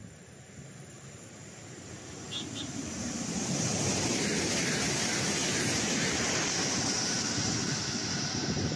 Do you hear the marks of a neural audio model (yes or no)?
yes